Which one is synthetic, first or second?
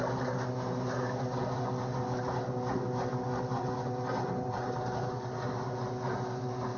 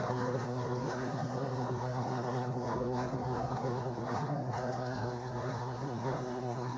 second